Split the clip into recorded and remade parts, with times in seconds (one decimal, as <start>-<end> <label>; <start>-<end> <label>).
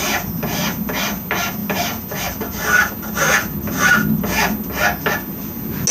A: 0.0-5.9 recorded